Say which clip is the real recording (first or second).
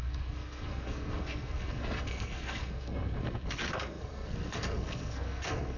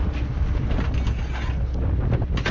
second